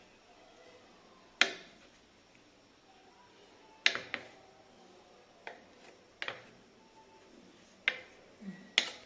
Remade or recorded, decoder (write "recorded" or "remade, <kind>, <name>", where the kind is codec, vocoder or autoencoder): recorded